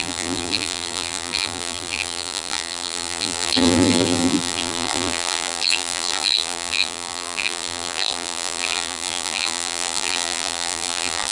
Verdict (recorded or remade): remade